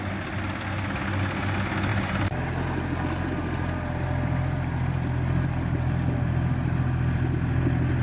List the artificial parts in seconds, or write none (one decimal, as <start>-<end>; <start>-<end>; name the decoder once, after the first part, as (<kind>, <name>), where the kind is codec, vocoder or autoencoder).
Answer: 1.9-2.4 (vocoder, BigVGAN v2)